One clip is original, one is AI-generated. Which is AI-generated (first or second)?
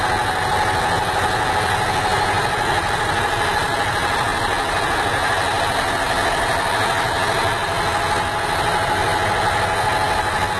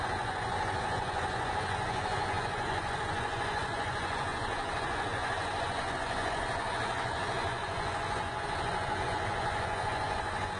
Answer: second